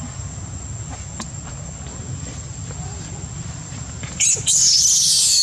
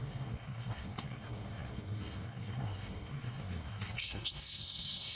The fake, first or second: second